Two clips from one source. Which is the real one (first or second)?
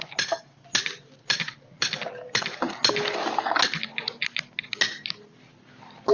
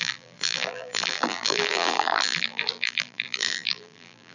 first